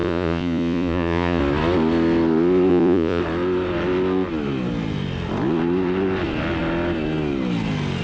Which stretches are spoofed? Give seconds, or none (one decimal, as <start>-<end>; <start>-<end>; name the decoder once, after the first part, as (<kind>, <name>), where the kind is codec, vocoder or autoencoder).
0.0-1.4 (vocoder, Vocos); 2.7-3.2